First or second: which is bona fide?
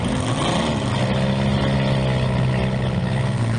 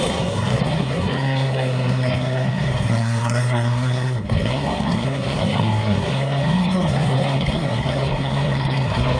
first